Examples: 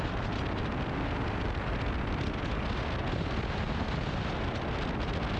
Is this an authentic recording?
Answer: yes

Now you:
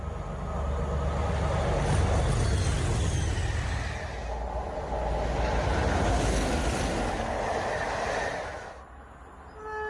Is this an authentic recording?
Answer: yes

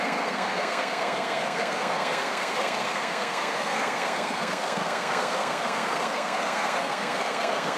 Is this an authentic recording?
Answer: no